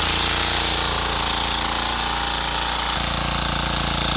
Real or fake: real